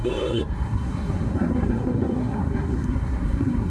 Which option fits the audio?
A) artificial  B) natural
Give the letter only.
A